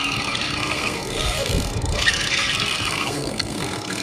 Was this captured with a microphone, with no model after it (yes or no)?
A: no